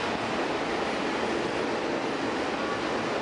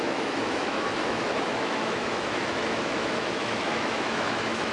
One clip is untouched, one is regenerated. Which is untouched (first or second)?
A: first